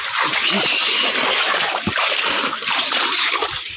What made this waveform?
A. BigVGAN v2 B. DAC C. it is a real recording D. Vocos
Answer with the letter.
C